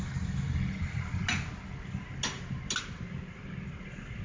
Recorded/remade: recorded